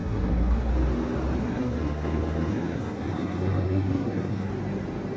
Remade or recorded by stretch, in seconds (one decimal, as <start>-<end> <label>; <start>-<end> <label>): 0.0-0.7 remade; 0.7-1.4 recorded; 1.4-4.5 remade; 4.5-5.2 recorded